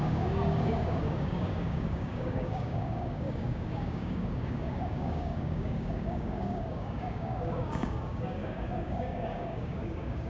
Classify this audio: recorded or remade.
remade